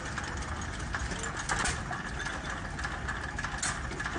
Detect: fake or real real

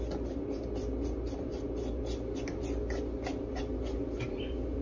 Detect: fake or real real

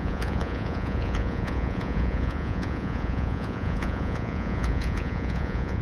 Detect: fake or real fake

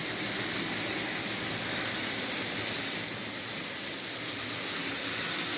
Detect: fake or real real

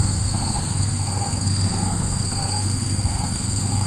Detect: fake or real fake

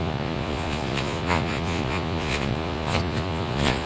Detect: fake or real fake